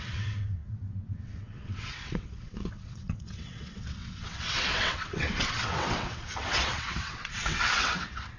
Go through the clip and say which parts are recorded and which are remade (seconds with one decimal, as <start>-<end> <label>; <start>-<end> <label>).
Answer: 0.0-8.4 remade

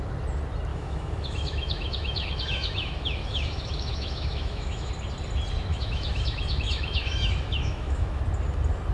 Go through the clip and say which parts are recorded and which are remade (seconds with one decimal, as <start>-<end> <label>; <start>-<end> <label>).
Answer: 0.0-0.7 recorded; 0.7-4.9 remade; 4.9-5.7 recorded; 5.7-8.2 remade; 8.2-8.9 recorded

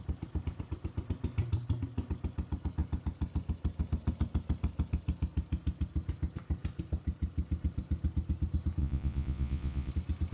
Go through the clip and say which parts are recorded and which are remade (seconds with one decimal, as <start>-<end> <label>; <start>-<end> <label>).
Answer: 0.0-8.8 recorded; 8.8-9.9 remade; 9.9-10.3 recorded